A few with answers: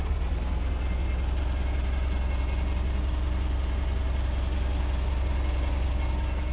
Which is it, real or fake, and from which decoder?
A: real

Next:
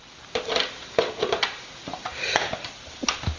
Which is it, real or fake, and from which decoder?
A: real